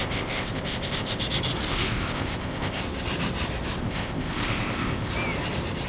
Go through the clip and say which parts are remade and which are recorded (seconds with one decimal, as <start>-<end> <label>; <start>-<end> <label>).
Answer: 0.0-1.2 remade; 1.2-1.7 recorded; 1.7-2.8 remade; 2.8-3.8 recorded; 3.8-5.1 remade; 5.1-5.9 recorded